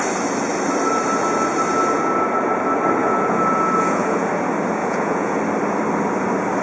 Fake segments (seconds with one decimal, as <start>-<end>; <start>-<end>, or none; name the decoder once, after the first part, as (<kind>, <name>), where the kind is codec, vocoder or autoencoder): 3.0-4.3 (vocoder, Vocos); 4.8-5.4